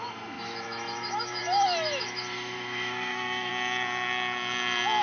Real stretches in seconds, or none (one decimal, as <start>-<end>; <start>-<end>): 3.5-5.0